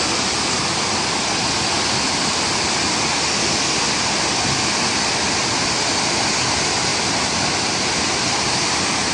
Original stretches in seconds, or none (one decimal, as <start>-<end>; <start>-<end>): 0.0-9.1